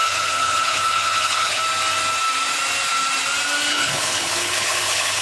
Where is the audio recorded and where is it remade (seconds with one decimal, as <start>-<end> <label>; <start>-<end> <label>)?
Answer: 0.0-1.6 remade; 1.6-3.7 recorded; 3.7-5.2 remade